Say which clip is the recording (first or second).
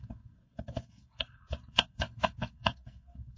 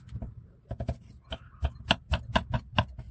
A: second